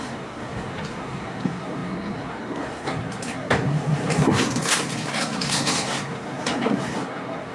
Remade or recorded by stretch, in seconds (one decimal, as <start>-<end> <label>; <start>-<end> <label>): 0.0-7.5 remade

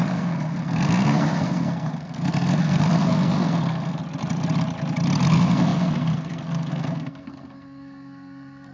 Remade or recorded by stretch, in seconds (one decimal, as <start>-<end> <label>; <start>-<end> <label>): 0.0-4.0 remade; 4.0-5.3 recorded; 5.3-8.7 remade

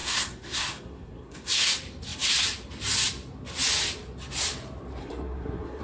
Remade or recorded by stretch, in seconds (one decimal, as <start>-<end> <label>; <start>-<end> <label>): 0.0-1.7 remade; 1.7-5.0 recorded; 5.0-5.8 remade

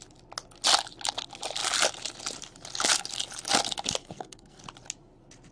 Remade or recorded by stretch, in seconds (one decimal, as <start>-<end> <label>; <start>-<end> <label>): 0.0-4.0 recorded; 4.0-4.6 remade; 4.6-5.5 recorded

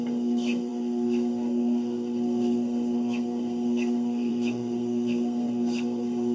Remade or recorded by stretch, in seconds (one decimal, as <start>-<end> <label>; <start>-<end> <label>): 0.0-6.3 remade

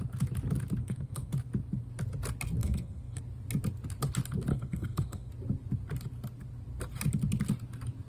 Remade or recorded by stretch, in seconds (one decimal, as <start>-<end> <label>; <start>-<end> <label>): 0.0-0.8 recorded; 0.8-1.3 remade; 1.3-2.6 recorded; 2.6-3.2 remade; 3.2-4.5 recorded; 4.5-5.3 remade; 5.3-8.1 recorded